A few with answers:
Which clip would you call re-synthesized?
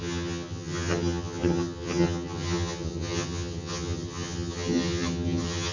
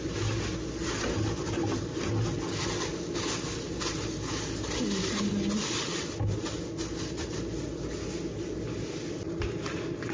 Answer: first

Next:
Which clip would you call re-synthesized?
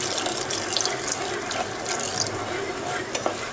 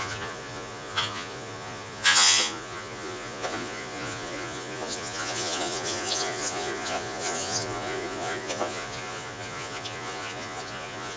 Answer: second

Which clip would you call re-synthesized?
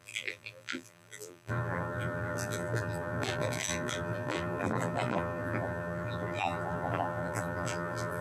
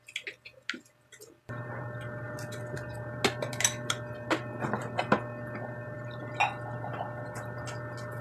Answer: first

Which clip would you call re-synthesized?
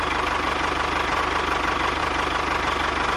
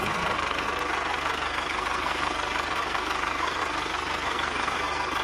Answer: second